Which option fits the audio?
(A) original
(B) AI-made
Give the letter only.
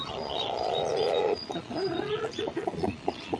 B